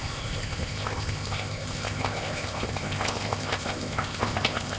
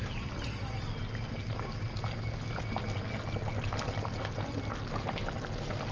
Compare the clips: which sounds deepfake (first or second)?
first